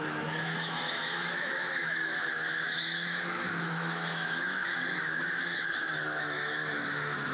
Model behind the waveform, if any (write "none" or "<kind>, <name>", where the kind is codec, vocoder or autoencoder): autoencoder, DAC-VAE